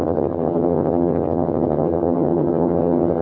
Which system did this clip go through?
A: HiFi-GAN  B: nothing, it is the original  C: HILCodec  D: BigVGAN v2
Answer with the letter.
A